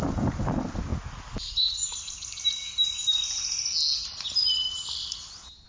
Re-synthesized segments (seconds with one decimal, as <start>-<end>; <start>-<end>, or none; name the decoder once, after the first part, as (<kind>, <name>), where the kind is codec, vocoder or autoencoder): none

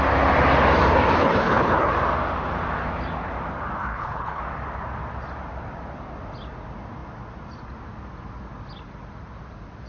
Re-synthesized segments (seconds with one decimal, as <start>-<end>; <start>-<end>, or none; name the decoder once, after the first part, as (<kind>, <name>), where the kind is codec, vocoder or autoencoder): 1.2-1.9 (codec, HILCodec); 3.8-4.4

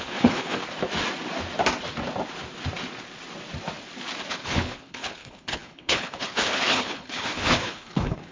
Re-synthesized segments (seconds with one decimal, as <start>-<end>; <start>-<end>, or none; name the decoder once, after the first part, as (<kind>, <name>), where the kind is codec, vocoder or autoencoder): 0.0-0.6 (codec, HILCodec); 4.3-8.3

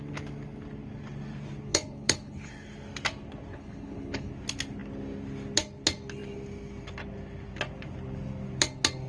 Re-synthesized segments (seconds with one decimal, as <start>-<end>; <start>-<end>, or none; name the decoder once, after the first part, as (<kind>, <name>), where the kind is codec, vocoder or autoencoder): 1.7-2.5 (codec, HILCodec); 3.5-4.3